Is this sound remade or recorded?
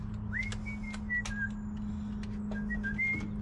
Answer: recorded